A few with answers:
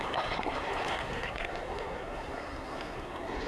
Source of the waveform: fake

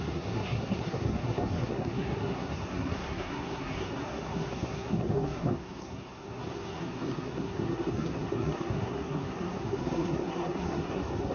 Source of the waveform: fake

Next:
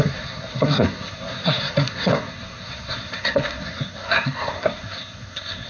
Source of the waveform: fake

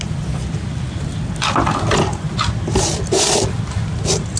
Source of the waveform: real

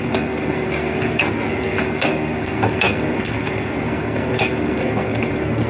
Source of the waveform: fake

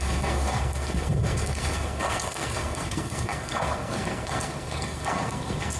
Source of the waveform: fake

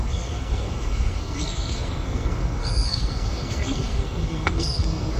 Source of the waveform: fake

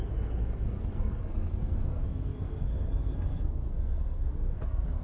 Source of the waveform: fake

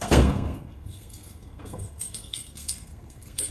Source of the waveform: fake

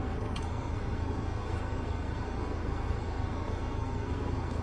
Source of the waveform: fake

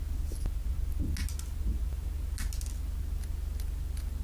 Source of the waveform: real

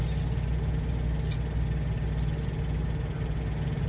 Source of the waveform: real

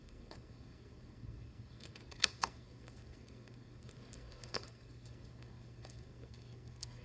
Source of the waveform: fake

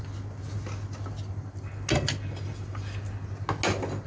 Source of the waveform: real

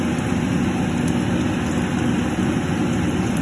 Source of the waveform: real